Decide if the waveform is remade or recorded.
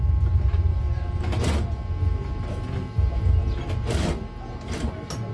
recorded